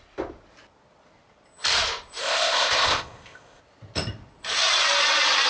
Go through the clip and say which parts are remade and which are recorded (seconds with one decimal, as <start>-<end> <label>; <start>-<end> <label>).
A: 0.0-2.2 recorded; 2.2-3.6 remade; 3.6-5.5 recorded